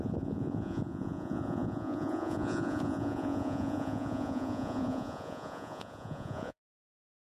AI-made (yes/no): yes